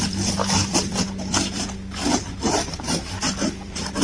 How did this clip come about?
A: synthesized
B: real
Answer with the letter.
A